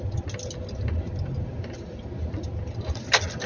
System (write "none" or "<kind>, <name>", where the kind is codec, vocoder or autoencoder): none